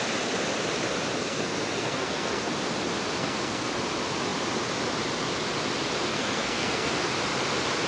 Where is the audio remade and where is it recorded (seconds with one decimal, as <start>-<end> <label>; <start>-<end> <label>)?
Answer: 0.0-1.2 recorded; 1.2-2.5 remade; 2.5-3.2 recorded; 3.2-3.7 remade; 3.7-6.1 recorded; 6.1-7.1 remade; 7.1-7.9 recorded